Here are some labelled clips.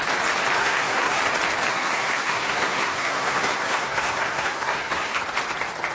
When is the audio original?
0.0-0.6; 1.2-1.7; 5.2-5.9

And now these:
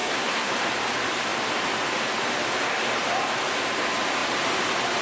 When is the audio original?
0.5-5.0

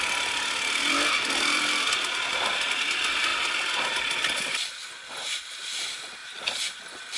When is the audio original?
0.0-7.2

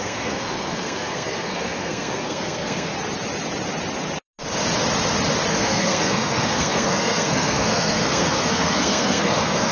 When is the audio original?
2.9-5.5